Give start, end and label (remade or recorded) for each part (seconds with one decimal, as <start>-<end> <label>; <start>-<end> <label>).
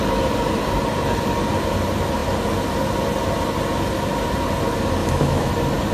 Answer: 0.0-5.0 recorded; 5.0-5.5 remade; 5.5-5.9 recorded